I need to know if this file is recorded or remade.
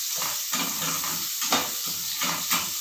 recorded